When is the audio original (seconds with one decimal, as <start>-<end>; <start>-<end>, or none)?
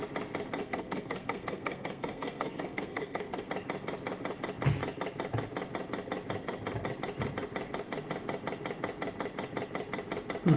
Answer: 0.0-0.6; 3.5-10.6